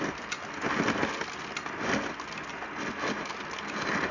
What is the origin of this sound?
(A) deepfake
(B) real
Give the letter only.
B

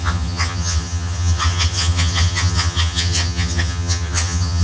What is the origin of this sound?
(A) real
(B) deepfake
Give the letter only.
B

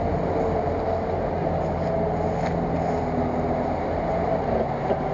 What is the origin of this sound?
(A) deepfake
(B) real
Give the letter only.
B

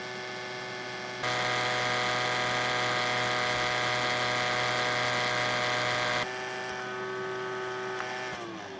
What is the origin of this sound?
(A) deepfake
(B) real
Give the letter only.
B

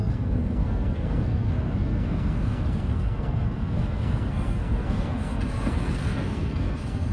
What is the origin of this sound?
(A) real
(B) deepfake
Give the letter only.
B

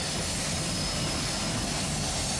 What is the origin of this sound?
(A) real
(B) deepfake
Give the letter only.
A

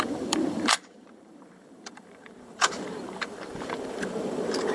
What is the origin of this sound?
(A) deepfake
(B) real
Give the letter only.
A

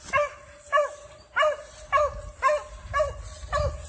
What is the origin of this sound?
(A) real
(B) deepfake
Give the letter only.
A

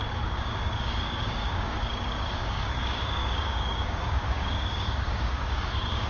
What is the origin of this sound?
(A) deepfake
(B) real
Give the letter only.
A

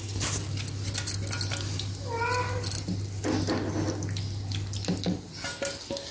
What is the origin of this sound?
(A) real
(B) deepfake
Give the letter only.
A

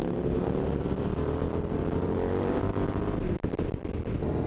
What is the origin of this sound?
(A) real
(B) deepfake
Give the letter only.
A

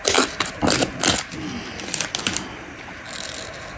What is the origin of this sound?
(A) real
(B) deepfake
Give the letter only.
A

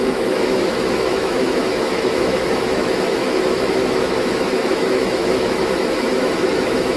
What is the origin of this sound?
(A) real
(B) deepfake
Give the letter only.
B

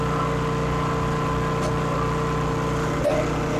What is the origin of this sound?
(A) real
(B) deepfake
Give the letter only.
A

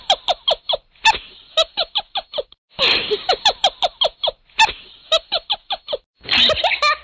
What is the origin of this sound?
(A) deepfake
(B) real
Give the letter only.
B